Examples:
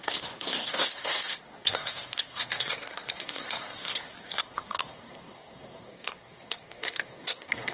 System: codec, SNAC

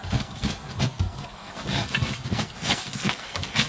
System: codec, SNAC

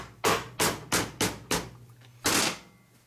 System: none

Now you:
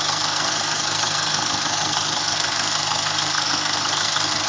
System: codec, SNAC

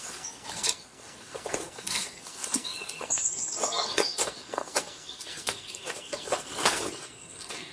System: codec, SNAC